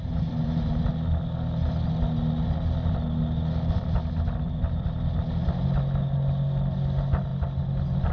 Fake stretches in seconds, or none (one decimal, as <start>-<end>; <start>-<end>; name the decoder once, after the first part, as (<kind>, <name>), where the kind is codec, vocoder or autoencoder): 0.0-0.7 (vocoder, BigVGAN v2)